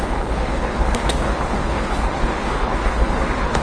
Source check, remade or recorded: remade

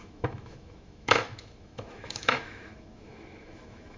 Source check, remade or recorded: remade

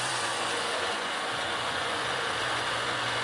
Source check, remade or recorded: remade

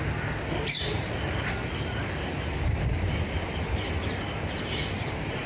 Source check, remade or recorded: recorded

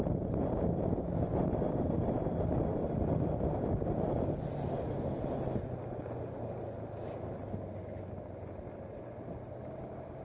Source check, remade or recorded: recorded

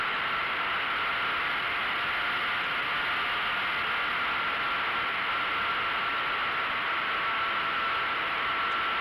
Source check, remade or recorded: recorded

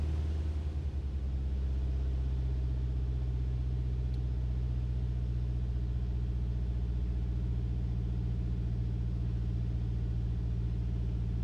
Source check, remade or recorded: recorded